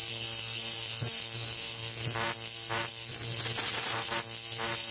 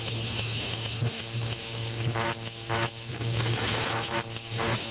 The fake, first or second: second